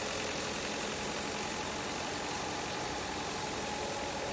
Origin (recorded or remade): recorded